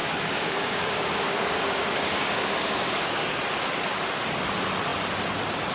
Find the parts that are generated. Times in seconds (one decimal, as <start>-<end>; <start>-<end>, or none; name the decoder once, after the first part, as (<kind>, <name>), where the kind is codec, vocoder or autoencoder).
0.0-3.4 (codec, DAC)